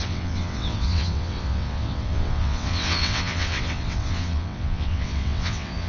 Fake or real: fake